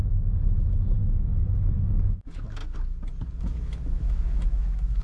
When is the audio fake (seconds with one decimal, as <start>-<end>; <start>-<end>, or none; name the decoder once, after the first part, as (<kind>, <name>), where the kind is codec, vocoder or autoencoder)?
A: 0.0-2.6 (autoencoder, DAC-VAE); 3.4-5.0